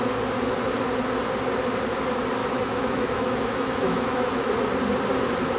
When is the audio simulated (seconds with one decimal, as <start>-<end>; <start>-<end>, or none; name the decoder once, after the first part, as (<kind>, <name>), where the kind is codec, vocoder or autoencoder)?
2.4-4.5 (autoencoder, DAC-VAE)